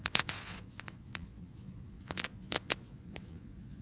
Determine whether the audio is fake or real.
fake